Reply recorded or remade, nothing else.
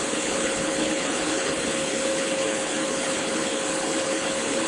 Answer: remade